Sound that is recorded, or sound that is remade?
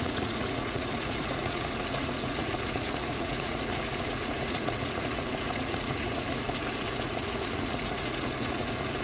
remade